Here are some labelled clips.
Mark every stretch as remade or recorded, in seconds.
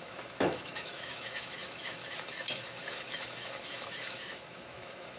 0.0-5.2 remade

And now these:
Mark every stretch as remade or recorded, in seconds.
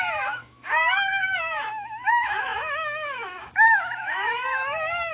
0.0-5.1 remade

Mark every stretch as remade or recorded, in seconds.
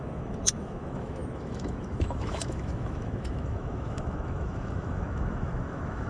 0.0-6.1 remade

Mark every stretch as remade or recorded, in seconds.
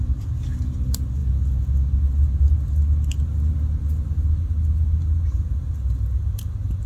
0.0-6.9 recorded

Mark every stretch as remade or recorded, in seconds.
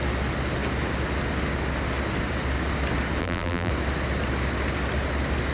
0.0-3.2 recorded; 3.2-3.7 remade; 3.7-5.5 recorded